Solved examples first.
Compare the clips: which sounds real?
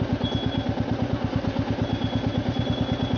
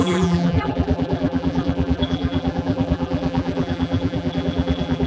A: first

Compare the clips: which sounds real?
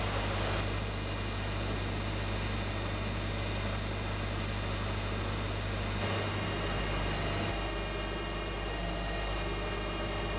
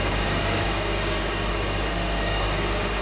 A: first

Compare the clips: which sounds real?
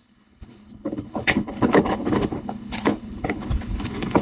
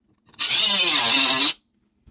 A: second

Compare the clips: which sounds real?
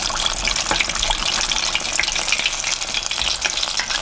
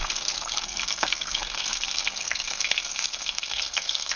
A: first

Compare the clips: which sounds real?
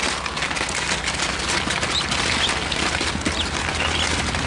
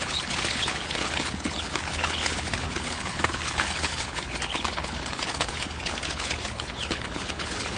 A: first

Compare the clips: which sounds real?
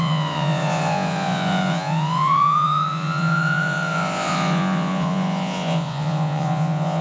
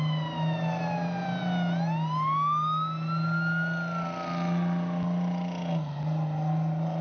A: second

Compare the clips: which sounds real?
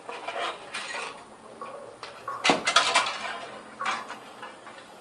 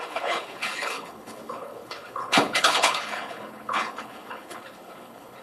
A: first